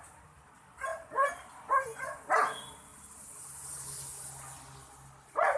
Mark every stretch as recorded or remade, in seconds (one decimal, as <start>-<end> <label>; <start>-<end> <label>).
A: 0.0-5.6 recorded